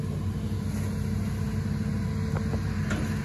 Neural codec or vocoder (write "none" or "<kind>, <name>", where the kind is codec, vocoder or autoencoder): none